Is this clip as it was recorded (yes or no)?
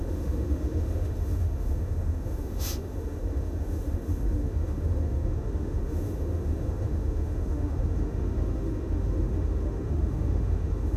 no